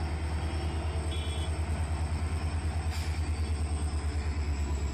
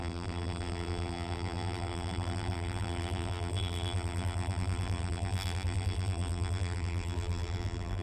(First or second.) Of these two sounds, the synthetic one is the second